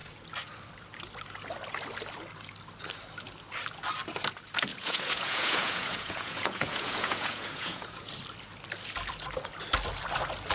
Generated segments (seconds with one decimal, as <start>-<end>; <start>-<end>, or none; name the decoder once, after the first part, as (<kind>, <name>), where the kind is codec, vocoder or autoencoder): 4.7-8.1 (vocoder, Vocos)